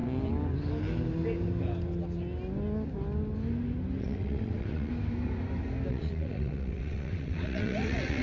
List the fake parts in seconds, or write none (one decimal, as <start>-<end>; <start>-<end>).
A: 4.0-4.9; 5.9-8.2